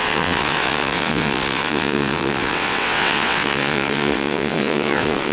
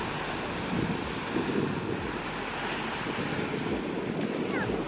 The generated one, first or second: first